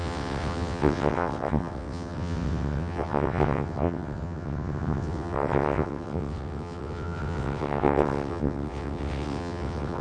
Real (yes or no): no